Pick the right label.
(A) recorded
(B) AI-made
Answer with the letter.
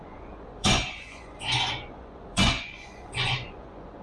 B